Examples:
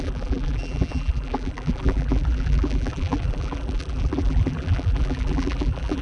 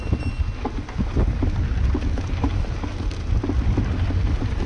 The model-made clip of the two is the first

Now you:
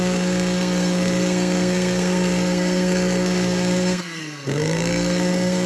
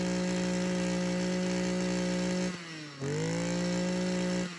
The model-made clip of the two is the first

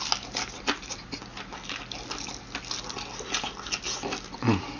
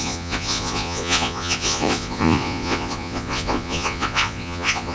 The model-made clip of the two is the second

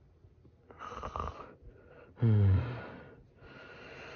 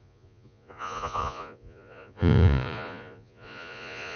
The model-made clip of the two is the second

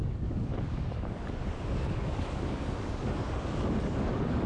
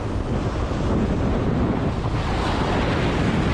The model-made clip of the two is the first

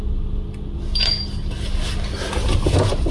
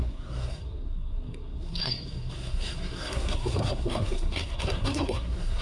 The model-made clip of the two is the second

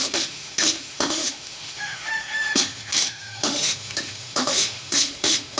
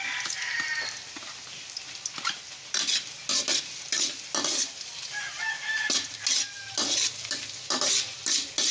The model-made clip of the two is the first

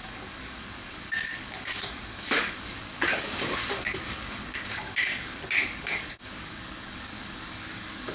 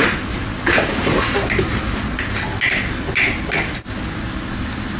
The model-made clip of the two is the first